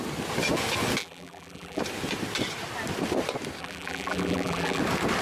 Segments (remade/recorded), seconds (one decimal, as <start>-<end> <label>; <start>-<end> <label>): 0.0-1.0 recorded; 1.0-1.8 remade; 1.8-3.6 recorded; 3.6-4.8 remade; 4.8-5.2 recorded